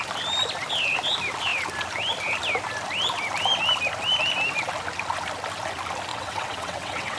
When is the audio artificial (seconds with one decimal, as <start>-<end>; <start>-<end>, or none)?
6.1-7.2